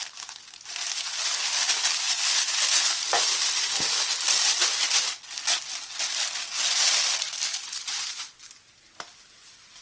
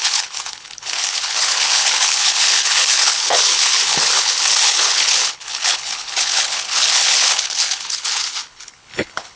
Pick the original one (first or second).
first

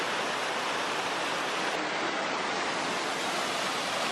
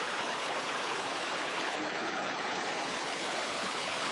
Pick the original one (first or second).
first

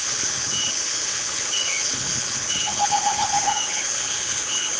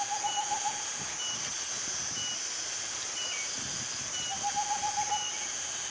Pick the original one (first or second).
second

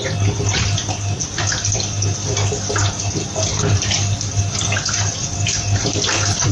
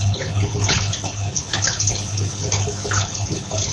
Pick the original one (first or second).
first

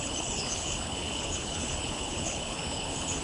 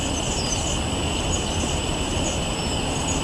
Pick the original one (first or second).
second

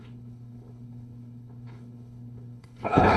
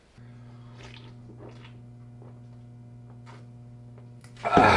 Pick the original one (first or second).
second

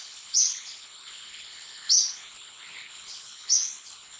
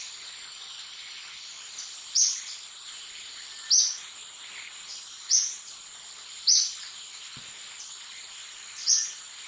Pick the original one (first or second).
second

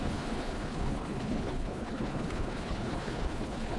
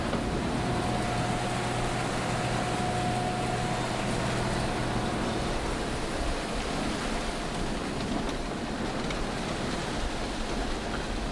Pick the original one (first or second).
second